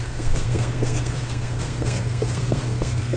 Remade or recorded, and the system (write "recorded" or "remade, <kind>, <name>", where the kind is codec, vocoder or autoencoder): remade, codec, SNAC